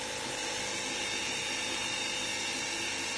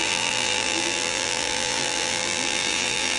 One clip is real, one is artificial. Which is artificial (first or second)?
second